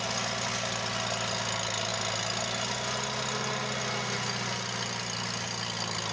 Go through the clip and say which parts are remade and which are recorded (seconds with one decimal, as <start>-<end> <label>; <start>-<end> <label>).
0.0-6.1 recorded